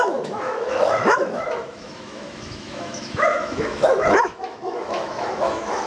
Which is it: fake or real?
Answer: fake